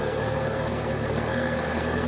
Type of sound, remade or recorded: remade